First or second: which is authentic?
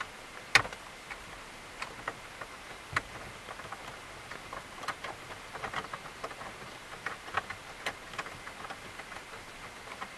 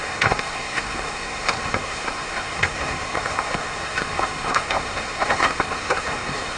first